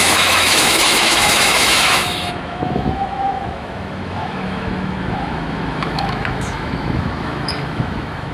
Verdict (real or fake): fake